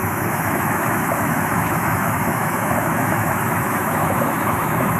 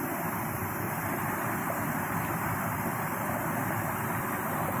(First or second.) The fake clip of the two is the first